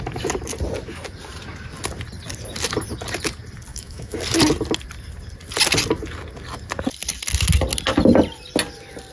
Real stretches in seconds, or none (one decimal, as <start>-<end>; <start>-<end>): 0.0-3.7; 4.2-9.1